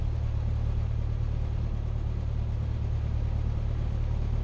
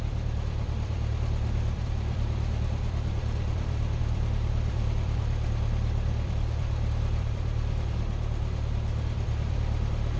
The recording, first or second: first